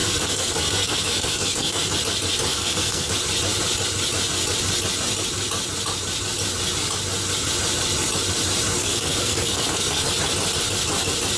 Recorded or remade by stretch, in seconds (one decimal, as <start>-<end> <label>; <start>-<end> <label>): 0.0-1.9 remade; 1.9-2.5 recorded; 2.5-3.1 remade; 3.1-8.8 recorded; 8.8-10.1 remade; 10.1-11.4 recorded

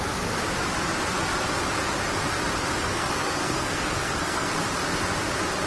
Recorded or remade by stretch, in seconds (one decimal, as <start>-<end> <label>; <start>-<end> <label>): 0.0-2.9 recorded; 2.9-4.5 remade; 4.5-5.7 recorded